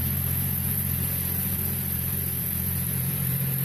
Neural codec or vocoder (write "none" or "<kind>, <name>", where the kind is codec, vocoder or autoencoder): vocoder, BigVGAN v2